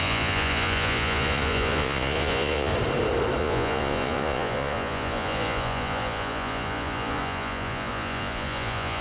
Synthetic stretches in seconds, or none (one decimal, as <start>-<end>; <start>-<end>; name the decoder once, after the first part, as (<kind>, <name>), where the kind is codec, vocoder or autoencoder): 0.0-2.7 (vocoder, Vocos); 3.4-9.0